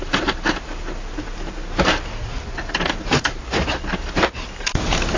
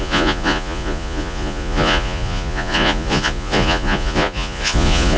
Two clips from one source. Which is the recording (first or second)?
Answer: first